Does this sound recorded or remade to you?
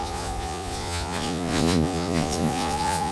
remade